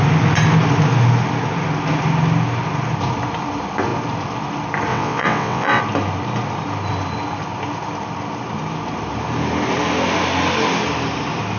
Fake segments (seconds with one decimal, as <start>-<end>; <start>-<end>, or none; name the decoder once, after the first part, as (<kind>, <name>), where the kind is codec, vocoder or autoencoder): 4.9-5.8 (vocoder, WaveNeXt)